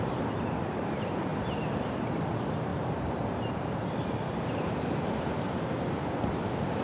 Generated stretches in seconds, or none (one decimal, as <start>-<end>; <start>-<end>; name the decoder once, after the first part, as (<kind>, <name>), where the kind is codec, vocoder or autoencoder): 0.0-6.8 (vocoder, BigVGAN v2)